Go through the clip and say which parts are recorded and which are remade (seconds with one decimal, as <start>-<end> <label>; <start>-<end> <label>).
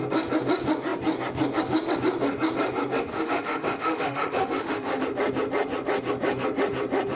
0.0-3.1 recorded; 3.1-5.0 remade; 5.0-7.2 recorded